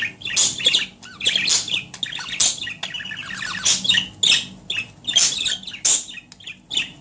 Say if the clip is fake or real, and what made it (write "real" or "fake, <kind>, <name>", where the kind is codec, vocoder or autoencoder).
real